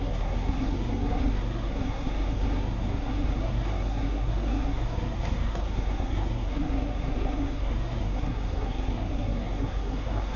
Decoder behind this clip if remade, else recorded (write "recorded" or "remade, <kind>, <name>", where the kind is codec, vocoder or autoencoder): remade, codec, SNAC